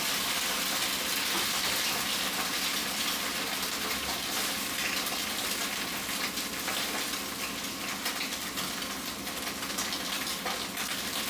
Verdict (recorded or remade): recorded